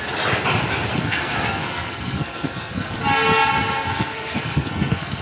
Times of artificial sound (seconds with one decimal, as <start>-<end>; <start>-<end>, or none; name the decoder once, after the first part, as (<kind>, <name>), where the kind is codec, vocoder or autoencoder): 0.9-3.0 (codec, SNAC); 3.9-5.2